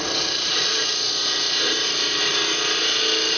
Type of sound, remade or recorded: recorded